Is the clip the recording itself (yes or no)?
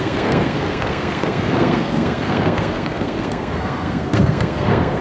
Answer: no